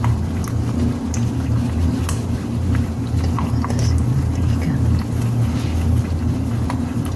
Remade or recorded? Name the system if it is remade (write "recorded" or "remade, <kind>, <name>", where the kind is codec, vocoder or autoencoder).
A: recorded